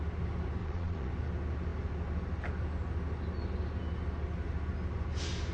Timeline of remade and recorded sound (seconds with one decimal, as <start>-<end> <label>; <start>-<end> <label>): 0.0-0.6 recorded; 0.6-1.1 remade; 1.1-5.5 recorded